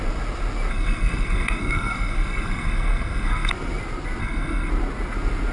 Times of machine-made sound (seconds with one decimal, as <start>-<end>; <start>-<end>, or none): 0.7-3.5; 4.2-4.7

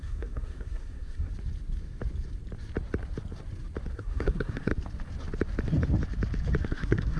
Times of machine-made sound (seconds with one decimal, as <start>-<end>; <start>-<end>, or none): 0.0-1.3; 3.9-4.7; 6.6-7.2

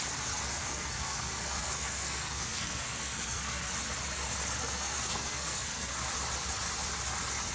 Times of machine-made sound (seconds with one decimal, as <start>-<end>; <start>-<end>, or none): 0.6-3.7; 4.6-5.9

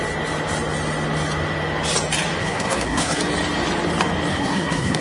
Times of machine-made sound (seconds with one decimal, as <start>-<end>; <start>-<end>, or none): 2.4-3.2; 4.3-5.0

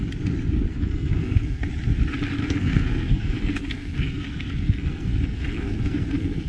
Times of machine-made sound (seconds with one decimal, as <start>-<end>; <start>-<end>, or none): 0.7-1.6; 2.4-6.5

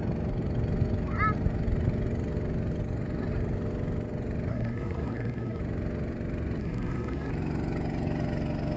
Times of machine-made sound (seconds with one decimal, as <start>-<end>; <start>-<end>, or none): 4.5-5.6; 6.6-7.3